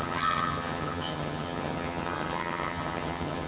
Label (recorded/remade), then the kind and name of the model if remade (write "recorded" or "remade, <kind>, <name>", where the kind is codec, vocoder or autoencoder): remade, vocoder, HiFi-GAN